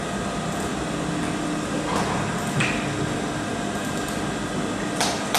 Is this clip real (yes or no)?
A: yes